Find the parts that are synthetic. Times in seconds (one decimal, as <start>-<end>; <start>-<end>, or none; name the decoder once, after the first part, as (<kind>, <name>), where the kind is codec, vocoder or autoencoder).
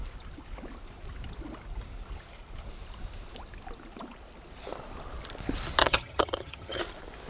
5.8-6.8 (vocoder, HiFi-GAN)